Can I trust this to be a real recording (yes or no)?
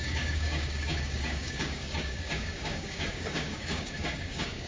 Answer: no